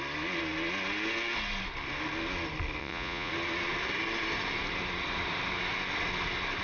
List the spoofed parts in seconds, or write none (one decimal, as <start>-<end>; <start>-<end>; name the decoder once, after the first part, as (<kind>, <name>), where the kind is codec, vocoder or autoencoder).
2.8-3.3 (vocoder, Vocos)